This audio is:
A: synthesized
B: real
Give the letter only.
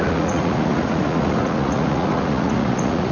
A